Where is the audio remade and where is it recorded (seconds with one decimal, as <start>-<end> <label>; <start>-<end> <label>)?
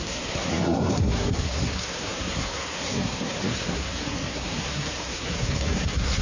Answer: 0.0-6.2 remade